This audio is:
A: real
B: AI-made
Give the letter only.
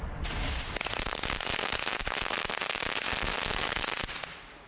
A